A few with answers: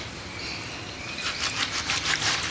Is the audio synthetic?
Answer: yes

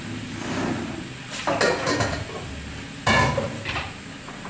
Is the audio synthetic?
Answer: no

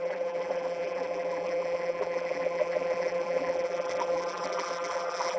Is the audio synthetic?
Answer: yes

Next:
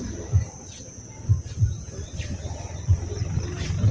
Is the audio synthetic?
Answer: yes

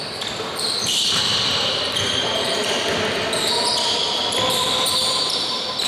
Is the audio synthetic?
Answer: yes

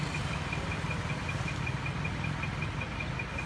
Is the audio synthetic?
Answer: no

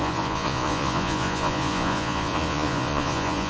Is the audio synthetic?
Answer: yes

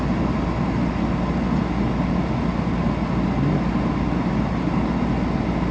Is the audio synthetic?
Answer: no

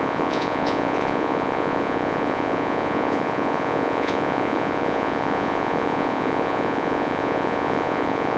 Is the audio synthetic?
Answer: yes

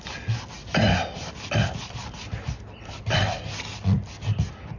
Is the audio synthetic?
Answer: no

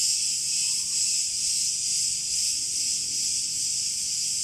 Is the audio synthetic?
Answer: no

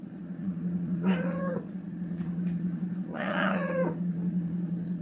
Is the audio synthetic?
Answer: yes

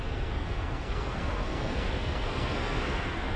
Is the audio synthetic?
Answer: yes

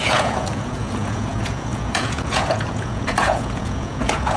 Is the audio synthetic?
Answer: yes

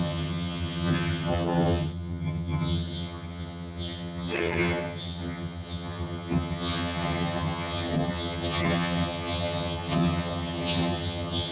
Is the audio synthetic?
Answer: yes